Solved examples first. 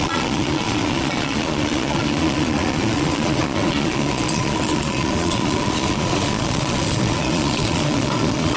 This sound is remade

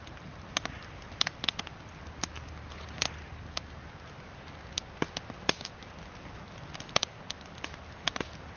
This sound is recorded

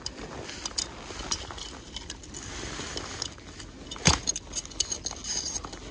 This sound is recorded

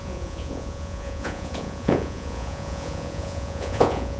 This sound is remade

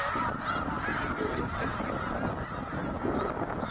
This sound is recorded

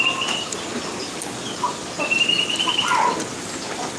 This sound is recorded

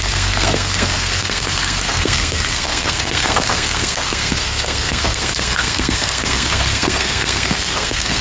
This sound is remade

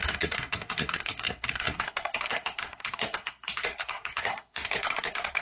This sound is remade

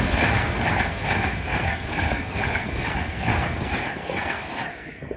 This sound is remade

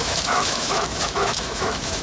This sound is remade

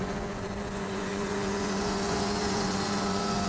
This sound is remade